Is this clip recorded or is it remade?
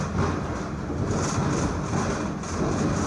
recorded